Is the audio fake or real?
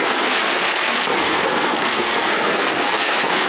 fake